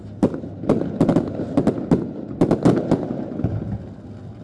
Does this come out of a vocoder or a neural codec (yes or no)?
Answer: no